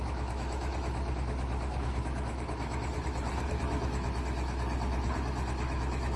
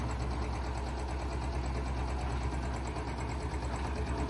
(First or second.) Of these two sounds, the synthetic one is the first